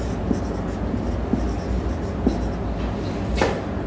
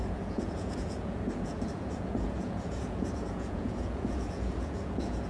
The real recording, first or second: first